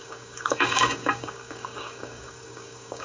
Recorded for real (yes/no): no